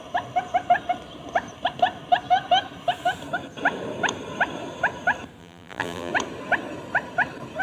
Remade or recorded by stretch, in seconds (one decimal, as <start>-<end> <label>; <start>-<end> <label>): 0.0-5.4 recorded; 5.4-6.1 remade; 6.1-7.6 recorded